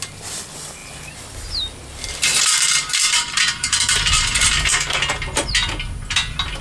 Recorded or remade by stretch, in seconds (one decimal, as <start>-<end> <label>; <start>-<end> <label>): 0.0-2.3 recorded; 2.3-4.7 remade; 4.7-6.6 recorded